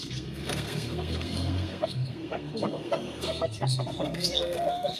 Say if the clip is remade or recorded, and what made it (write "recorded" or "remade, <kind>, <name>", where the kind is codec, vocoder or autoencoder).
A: remade, codec, SNAC